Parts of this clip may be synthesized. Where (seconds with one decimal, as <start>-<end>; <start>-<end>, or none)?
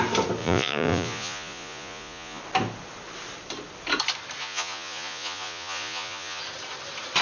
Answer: 0.4-2.4; 4.4-6.4